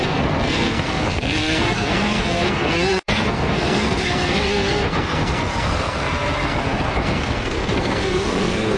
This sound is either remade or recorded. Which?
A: remade